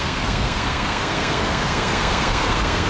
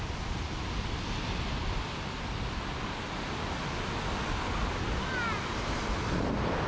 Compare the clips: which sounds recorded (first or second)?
second